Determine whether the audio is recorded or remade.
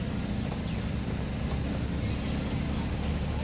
recorded